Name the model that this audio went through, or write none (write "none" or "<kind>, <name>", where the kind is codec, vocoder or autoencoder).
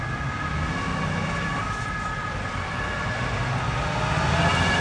none